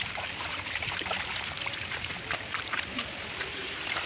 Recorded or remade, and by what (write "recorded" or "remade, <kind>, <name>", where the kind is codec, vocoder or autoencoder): remade, vocoder, BigVGAN v2